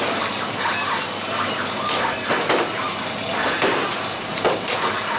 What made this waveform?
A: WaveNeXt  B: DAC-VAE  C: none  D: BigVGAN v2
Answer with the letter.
C